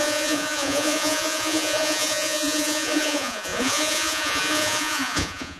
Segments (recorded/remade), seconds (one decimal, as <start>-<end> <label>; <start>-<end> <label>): 0.0-5.6 remade